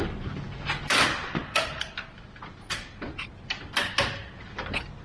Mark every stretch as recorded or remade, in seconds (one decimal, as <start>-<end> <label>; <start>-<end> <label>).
0.0-5.0 recorded